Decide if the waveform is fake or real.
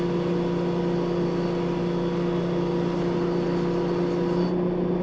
real